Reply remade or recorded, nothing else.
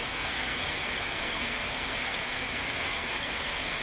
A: remade